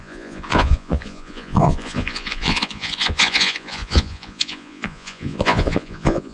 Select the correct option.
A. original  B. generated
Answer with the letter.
B